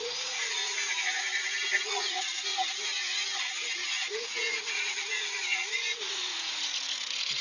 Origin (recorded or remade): remade